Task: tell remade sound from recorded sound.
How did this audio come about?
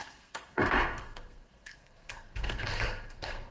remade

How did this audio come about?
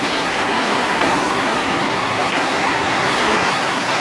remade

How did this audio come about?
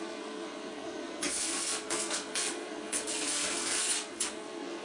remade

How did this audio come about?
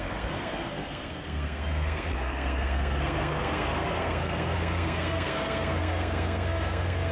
remade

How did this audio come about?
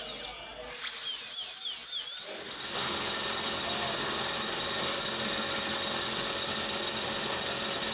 recorded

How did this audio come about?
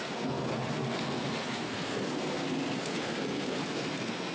remade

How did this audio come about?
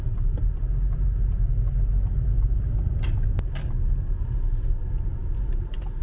recorded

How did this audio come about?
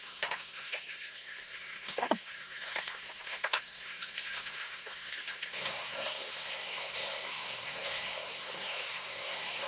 remade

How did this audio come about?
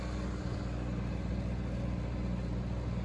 recorded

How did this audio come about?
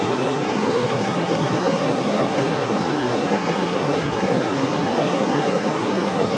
remade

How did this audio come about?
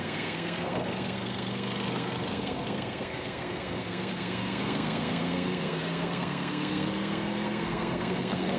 remade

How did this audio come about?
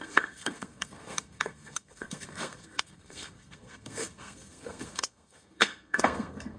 remade